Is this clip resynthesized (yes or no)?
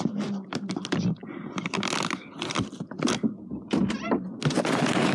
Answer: no